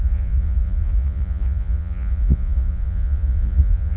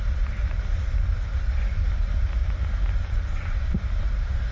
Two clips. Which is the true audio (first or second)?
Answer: second